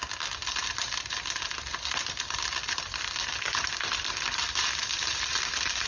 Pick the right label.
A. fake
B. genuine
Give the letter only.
B